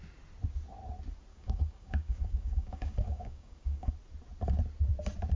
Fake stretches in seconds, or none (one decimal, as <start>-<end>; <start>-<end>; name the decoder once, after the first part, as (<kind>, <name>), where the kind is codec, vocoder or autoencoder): 1.3-3.9 (codec, DAC)